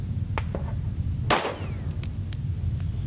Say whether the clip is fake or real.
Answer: real